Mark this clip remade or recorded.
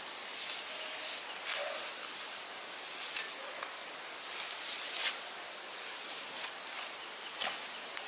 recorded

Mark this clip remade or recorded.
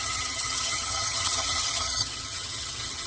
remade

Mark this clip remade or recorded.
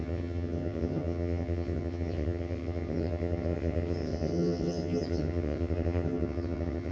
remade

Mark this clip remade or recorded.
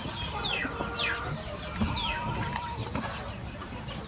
recorded